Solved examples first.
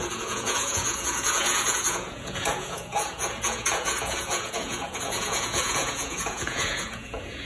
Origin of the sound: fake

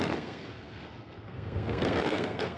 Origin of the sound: fake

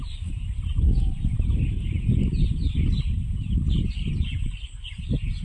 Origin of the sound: real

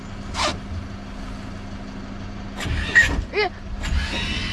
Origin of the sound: real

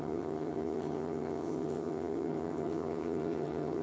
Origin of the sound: fake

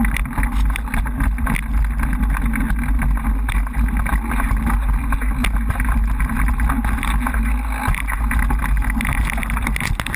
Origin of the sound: real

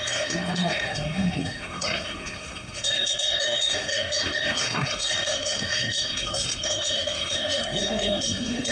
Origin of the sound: fake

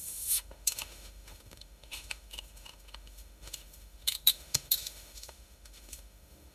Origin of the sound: fake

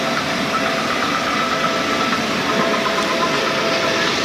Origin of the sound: real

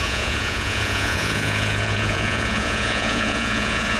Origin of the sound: fake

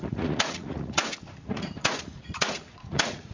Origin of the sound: fake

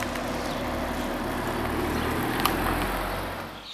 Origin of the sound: real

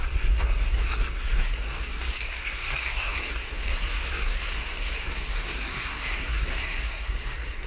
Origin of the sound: fake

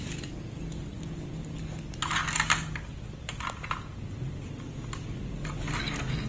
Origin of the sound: real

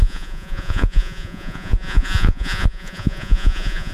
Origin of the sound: fake